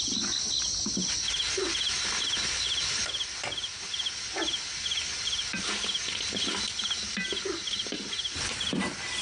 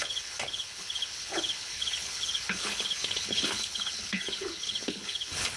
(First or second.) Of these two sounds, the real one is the first